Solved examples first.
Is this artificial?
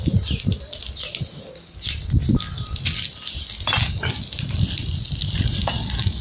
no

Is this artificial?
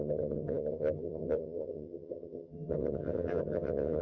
yes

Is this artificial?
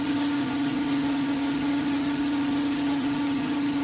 yes